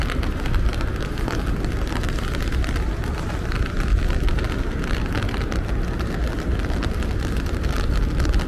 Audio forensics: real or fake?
real